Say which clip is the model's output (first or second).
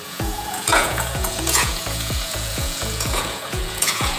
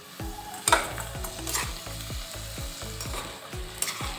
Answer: first